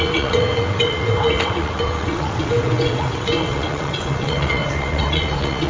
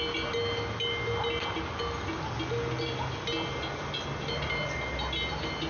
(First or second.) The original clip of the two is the second